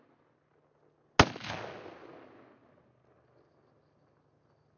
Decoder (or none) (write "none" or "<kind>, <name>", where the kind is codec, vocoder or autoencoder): none